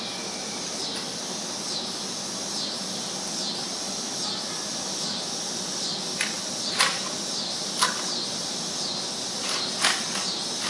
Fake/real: real